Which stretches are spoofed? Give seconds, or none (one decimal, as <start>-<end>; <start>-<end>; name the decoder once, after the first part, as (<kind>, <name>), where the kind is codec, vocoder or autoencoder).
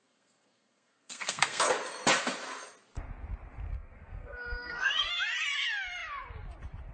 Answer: 0.0-1.7 (codec, SNAC); 3.7-5.1